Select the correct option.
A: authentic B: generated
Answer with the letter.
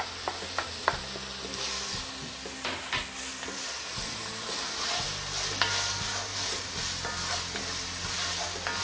A